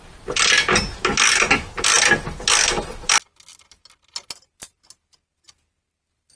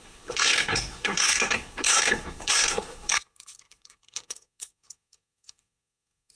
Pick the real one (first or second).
first